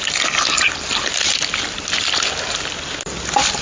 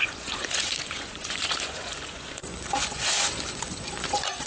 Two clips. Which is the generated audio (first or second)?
second